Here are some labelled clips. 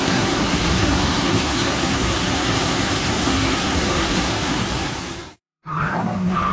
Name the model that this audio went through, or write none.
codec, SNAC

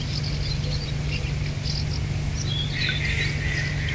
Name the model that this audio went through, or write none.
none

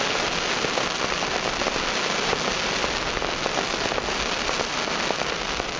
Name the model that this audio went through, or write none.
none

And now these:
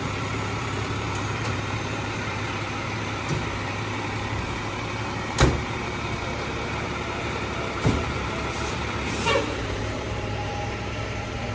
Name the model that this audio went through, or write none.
vocoder, BigVGAN v2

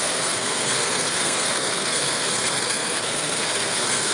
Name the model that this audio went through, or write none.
codec, SNAC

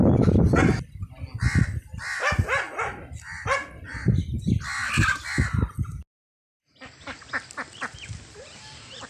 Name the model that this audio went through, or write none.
none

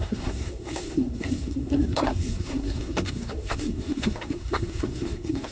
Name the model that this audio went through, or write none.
codec, SNAC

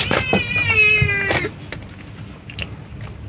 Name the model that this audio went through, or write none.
none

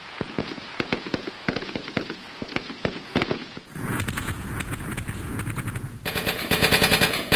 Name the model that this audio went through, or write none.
vocoder, Vocos